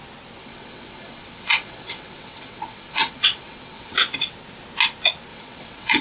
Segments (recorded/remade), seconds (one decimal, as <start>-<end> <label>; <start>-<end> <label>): 0.0-0.4 recorded; 0.4-3.9 remade; 3.9-5.3 recorded; 5.3-6.0 remade